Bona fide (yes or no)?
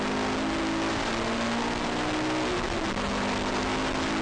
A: yes